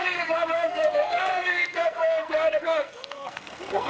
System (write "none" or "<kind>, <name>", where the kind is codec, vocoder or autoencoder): codec, SNAC